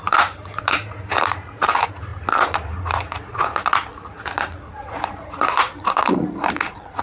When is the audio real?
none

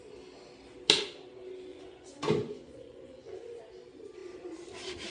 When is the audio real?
0.0-1.7; 3.6-5.1